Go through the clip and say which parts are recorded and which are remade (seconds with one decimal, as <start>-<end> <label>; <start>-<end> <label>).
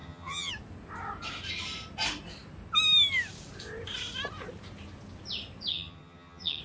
0.0-0.5 remade; 0.5-5.7 recorded; 5.7-6.6 remade